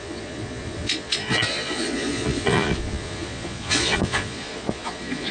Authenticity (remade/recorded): remade